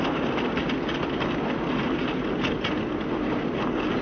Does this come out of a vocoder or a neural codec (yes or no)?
no